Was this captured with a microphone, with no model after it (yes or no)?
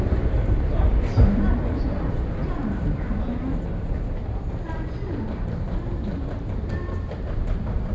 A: no